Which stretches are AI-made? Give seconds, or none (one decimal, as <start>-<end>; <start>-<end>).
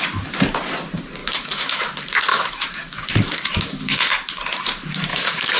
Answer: 1.2-1.8; 2.3-4.1; 5.1-5.6